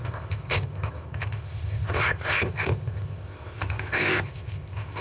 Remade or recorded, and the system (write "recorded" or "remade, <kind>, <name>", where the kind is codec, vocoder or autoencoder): remade, codec, ZipCodec